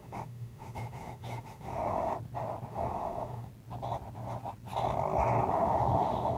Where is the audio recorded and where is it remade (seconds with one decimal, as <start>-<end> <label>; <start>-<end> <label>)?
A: 0.0-2.1 remade; 2.1-2.7 recorded; 2.7-3.5 remade; 3.5-5.5 recorded; 5.5-6.4 remade